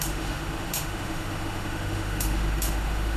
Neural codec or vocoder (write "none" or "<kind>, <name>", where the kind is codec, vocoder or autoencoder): autoencoder, DAC-VAE